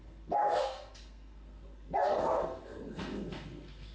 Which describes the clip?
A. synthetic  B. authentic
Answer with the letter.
A